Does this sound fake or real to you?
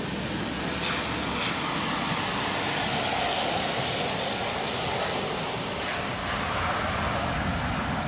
real